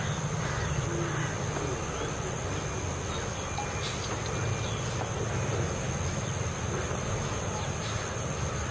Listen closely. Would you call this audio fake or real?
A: real